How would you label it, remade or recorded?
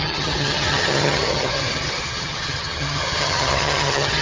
remade